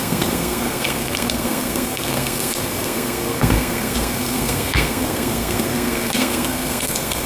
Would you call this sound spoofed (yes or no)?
yes